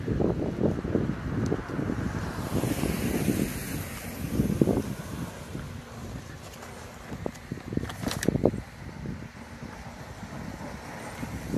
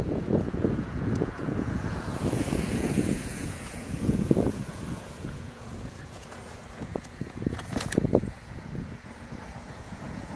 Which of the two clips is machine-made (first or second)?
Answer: second